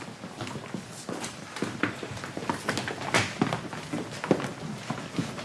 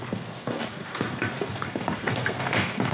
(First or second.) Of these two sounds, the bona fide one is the first